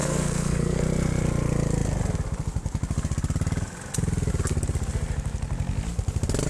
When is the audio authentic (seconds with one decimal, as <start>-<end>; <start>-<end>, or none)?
0.8-6.5